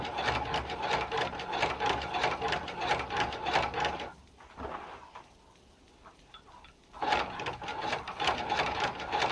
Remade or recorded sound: recorded